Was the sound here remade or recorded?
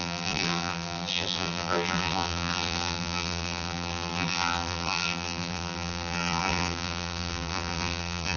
remade